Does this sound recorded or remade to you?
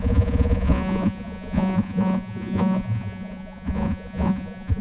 remade